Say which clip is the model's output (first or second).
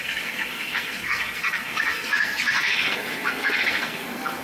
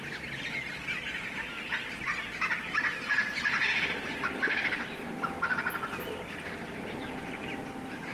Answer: first